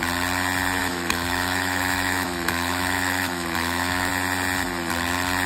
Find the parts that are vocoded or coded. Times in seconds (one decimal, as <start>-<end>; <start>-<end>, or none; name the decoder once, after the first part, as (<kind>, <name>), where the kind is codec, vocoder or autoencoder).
0.8-4.1 (autoencoder, DAC-VAE)